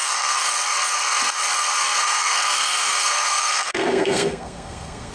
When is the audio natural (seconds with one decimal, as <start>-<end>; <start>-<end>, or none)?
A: 0.5-2.0